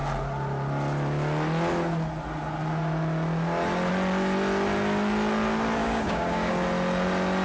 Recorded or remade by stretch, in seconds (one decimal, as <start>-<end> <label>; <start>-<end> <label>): 0.0-5.8 recorded; 5.8-6.5 remade; 6.5-7.4 recorded